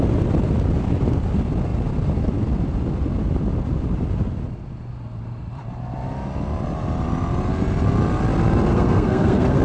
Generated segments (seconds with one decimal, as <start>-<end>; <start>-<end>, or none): 8.7-9.6